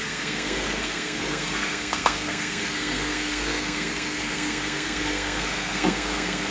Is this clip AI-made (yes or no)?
yes